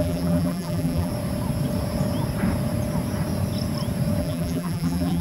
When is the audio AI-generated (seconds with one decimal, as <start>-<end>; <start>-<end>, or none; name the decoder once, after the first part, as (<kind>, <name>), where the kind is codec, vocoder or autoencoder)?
0.0-1.1 (vocoder, BigVGAN v2); 4.2-5.2